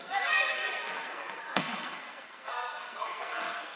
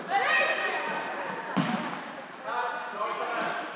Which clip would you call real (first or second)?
second